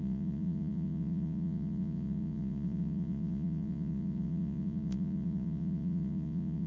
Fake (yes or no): yes